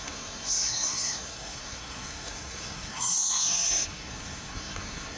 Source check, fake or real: fake